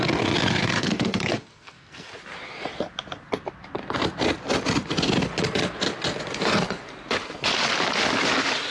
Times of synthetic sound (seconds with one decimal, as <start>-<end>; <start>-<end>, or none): 0.8-2.1